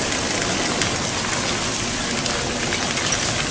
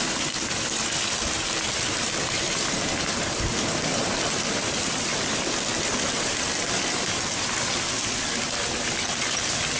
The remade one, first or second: second